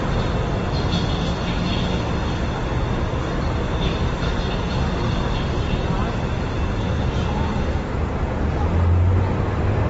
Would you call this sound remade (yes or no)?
no